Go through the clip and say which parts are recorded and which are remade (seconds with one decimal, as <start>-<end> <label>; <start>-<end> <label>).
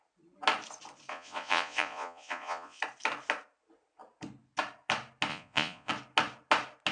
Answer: 0.0-1.1 recorded; 1.1-2.8 remade; 2.8-5.3 recorded; 5.3-5.9 remade; 5.9-6.9 recorded